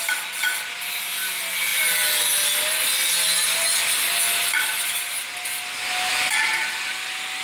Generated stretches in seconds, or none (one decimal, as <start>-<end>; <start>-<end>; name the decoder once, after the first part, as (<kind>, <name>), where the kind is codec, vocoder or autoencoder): none